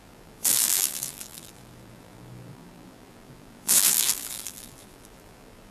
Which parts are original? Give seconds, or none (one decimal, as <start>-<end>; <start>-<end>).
none